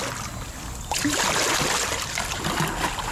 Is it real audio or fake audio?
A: real